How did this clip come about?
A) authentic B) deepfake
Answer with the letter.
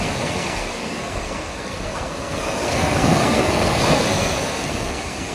B